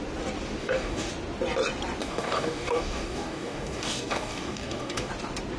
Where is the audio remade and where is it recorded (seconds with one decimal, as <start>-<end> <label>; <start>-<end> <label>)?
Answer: 0.0-0.6 recorded; 0.6-1.1 remade; 1.1-2.0 recorded; 2.0-5.1 remade; 5.1-5.6 recorded